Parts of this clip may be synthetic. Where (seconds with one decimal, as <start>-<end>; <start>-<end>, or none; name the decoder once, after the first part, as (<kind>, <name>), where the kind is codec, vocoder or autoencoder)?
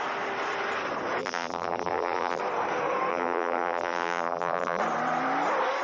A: 1.2-2.4 (vocoder, BigVGAN v2); 3.1-4.8